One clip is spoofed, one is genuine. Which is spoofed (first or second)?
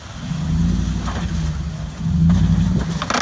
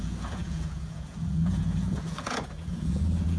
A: second